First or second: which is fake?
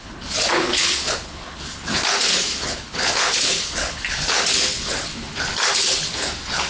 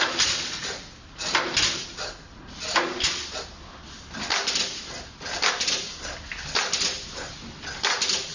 first